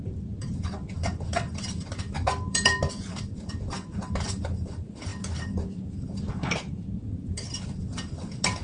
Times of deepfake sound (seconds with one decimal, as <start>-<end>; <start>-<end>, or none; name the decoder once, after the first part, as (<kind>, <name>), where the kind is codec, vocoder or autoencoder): 0.0-5.1 (vocoder, BigVGAN v2); 5.9-8.6